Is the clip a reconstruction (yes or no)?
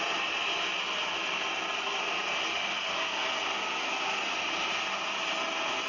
no